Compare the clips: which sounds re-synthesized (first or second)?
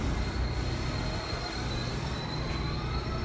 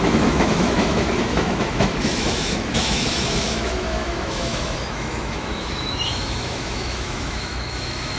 second